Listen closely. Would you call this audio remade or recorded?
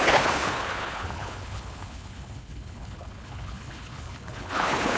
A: remade